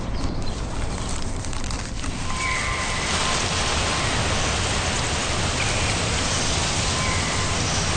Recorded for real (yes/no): yes